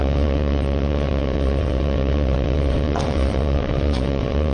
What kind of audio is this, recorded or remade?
remade